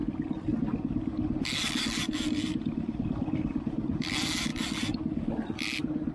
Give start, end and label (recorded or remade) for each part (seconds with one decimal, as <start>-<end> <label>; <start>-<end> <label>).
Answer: 0.0-6.1 recorded